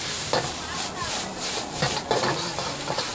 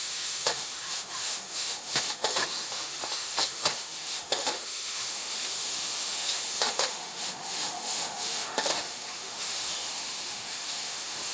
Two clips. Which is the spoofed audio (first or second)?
second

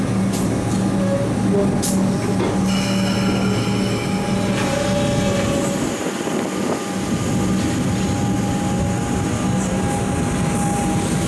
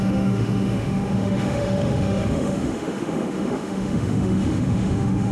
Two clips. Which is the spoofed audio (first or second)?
second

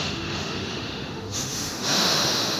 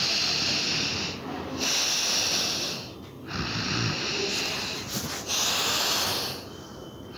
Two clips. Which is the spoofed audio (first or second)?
first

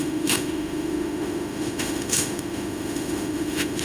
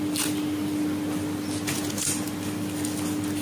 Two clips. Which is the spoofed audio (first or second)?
first